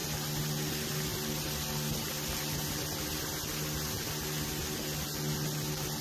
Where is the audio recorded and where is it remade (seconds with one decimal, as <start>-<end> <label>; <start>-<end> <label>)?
0.0-6.0 recorded